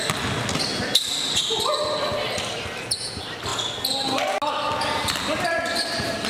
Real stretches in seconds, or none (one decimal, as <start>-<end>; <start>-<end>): 0.0-6.3

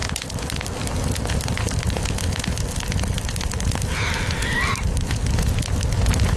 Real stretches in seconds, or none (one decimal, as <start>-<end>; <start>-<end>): 0.0-6.4

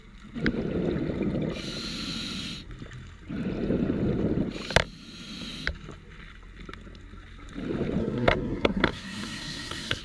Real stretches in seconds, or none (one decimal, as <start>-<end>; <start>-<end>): 0.0-8.0